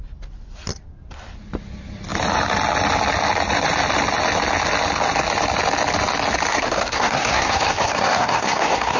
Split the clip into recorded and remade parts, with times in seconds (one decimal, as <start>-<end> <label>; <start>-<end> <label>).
0.0-6.5 recorded; 6.5-9.0 remade